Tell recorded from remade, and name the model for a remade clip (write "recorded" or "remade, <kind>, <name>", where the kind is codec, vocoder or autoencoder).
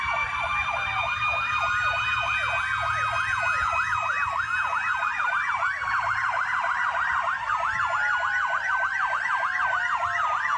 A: recorded